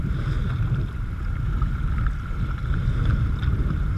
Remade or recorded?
recorded